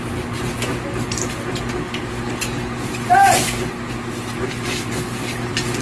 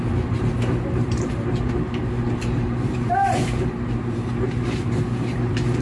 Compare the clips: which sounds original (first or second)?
first